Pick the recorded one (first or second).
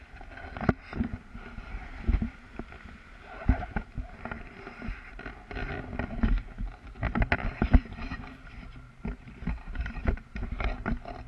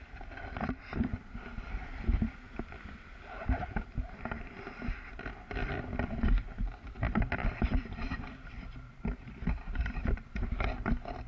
first